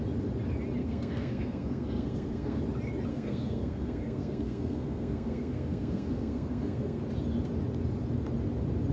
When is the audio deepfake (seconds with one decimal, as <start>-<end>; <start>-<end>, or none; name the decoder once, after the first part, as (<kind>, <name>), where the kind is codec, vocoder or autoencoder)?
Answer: 0.8-2.6 (codec, SNAC); 3.1-7.0